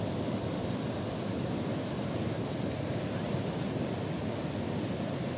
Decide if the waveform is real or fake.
real